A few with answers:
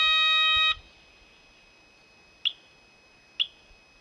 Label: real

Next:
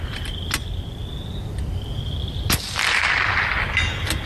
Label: real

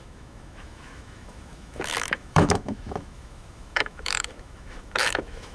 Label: fake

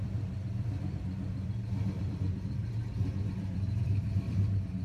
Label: fake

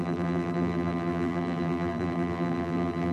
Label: fake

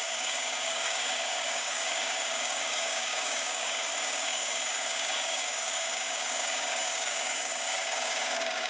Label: fake